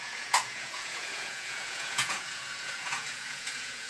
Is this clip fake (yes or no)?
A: yes